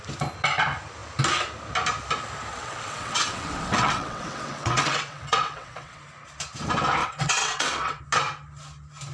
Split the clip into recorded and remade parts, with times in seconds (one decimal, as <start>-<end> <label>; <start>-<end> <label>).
0.0-2.5 recorded; 2.5-6.0 remade; 6.0-7.0 recorded; 7.0-8.0 remade; 8.0-9.1 recorded